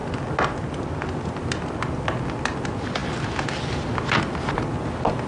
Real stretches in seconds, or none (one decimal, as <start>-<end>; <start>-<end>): 0.0-5.3